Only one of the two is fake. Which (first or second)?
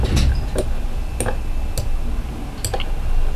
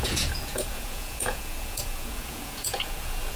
second